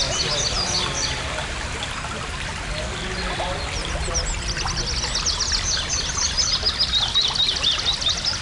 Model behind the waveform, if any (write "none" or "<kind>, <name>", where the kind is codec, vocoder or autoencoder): none